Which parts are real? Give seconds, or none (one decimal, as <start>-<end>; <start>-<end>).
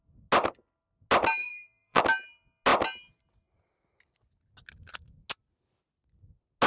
0.0-1.4; 2.0-6.7